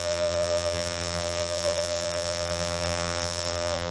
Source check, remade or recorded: remade